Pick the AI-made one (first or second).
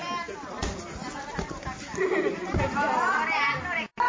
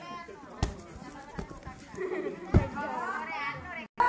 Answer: first